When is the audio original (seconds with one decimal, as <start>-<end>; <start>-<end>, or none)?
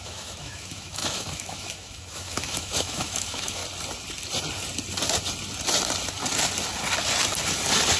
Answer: 3.6-8.0